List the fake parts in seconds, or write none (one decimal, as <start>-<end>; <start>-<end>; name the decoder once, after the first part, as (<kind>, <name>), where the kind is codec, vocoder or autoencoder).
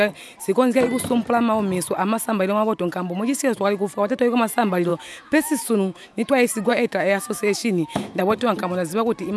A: 4.9-6.3 (autoencoder, DAC-VAE); 6.7-8.2